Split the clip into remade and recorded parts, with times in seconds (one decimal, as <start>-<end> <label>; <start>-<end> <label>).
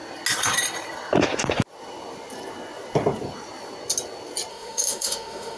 0.0-4.5 recorded; 4.5-5.6 remade